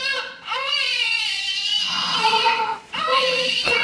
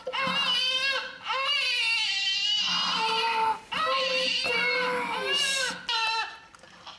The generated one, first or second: first